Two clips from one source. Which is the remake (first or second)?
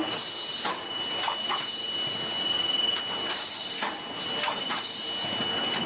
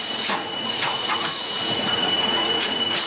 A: second